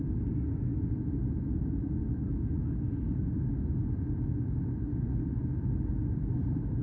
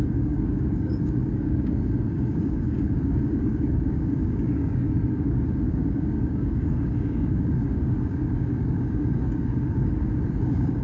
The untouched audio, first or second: first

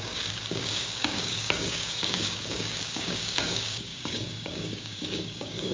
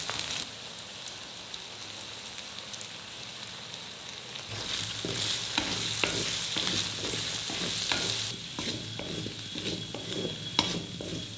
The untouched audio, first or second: second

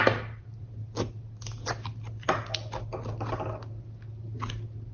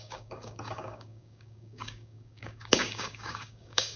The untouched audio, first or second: first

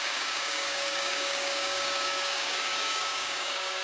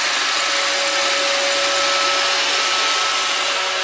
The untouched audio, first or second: second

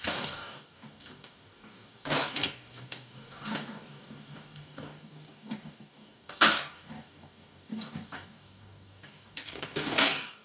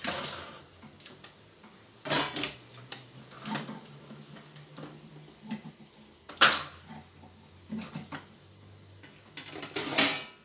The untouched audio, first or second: second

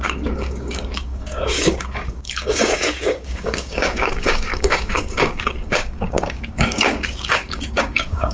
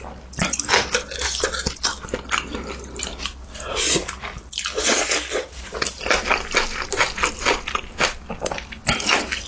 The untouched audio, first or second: second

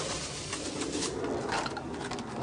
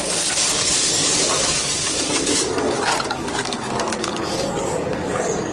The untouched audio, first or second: first